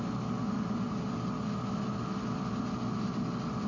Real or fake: real